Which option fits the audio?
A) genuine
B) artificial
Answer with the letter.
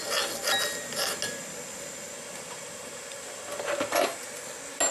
A